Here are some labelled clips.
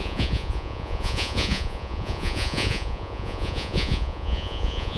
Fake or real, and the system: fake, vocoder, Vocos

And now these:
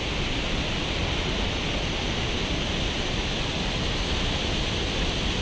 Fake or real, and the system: fake, vocoder, BigVGAN v2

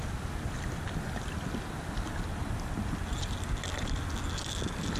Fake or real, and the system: real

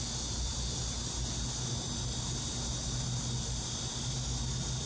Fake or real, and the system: real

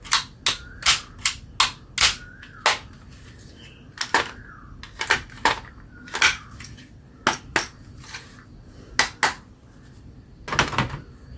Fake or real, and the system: real